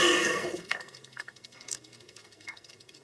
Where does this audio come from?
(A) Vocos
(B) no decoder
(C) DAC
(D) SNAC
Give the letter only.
D